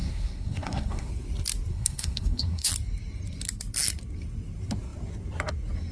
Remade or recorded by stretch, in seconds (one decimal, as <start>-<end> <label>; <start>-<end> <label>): 0.0-1.1 remade; 1.1-1.7 recorded; 1.7-2.7 remade; 2.7-5.9 recorded